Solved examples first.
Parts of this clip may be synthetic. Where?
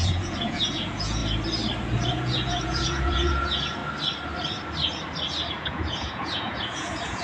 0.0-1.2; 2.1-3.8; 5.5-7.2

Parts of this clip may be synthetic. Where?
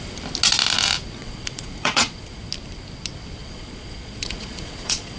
1.2-2.4; 3.4-5.2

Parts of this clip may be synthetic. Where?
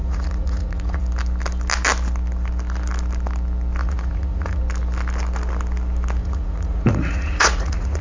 0.0-1.0; 3.8-4.6; 6.2-8.0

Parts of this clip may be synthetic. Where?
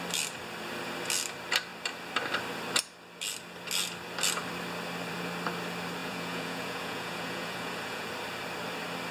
6.0-8.1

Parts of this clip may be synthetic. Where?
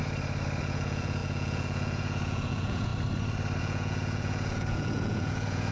0.6-2.9; 3.6-5.7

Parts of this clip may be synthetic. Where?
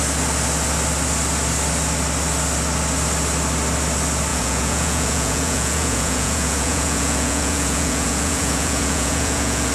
4.3-9.7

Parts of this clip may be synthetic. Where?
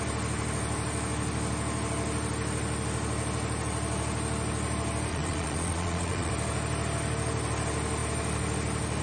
5.1-6.3